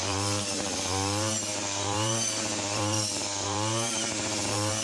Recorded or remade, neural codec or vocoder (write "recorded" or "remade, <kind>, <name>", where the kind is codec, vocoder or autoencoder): remade, vocoder, BigVGAN v2